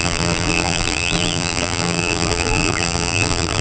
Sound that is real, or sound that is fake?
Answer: fake